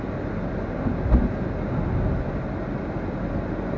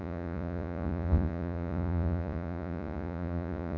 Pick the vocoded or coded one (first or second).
second